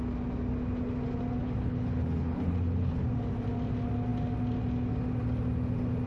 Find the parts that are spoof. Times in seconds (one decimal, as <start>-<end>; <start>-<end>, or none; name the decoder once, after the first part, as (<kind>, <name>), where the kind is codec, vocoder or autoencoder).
1.4-3.0 (codec, HILCodec)

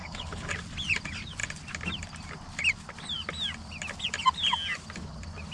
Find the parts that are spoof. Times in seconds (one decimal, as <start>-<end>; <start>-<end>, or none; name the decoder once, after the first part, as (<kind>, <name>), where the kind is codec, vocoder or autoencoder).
0.0-0.5 (codec, HILCodec)

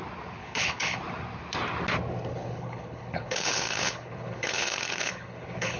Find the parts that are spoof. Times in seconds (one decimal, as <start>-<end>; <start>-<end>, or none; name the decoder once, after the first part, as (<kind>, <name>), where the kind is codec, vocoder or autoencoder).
0.4-1.0 (codec, HILCodec); 2.3-5.8

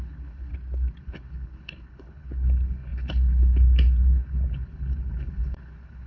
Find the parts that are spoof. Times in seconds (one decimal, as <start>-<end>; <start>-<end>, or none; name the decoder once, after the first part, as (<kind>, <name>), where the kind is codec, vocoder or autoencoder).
0.0-0.5 (codec, HILCodec); 1.0-6.1

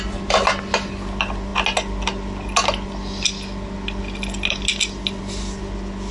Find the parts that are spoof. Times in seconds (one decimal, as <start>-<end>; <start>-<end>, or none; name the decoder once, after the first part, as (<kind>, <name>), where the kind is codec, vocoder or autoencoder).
none